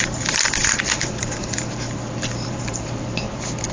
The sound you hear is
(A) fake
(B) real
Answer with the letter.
A